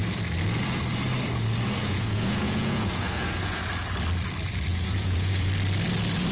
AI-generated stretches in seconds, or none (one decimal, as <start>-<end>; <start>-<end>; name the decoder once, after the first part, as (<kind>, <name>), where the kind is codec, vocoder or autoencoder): 1.8-3.6 (vocoder, Vocos); 4.7-5.5